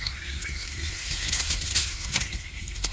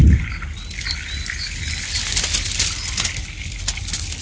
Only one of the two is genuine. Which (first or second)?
second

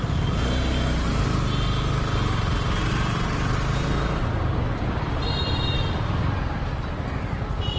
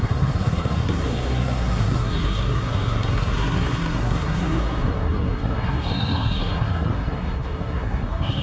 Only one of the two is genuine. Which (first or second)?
first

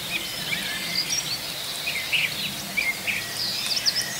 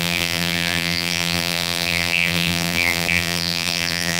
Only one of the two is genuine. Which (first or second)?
first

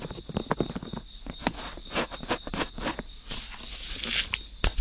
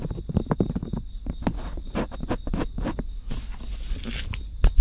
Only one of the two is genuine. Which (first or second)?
first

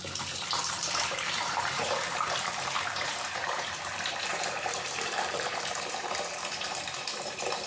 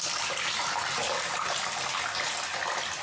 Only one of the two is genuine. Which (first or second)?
second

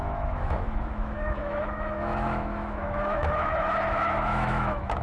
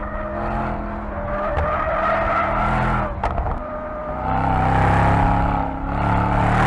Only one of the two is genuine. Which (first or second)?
second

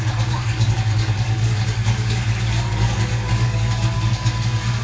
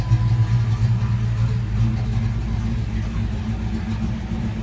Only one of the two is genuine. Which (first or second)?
second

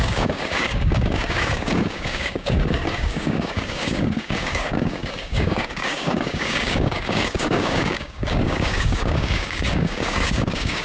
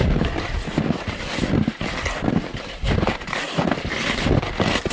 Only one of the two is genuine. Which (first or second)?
second